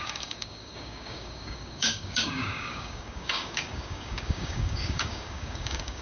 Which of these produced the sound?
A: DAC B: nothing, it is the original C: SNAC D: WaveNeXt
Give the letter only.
A